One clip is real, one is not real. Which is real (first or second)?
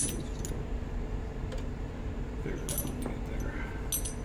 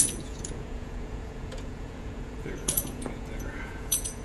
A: first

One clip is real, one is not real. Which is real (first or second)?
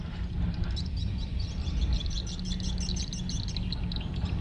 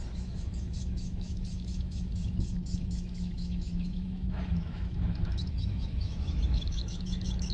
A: first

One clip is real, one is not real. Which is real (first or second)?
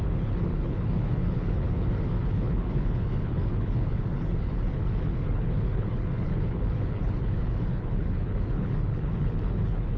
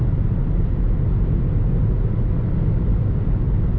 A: second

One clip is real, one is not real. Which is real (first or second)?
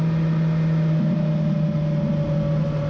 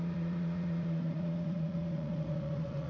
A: first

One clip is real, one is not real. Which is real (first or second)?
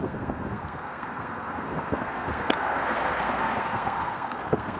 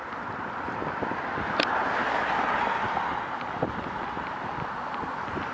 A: second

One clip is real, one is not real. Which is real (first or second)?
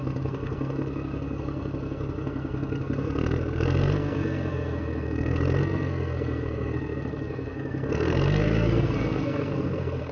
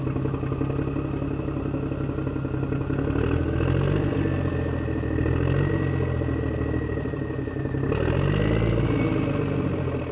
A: second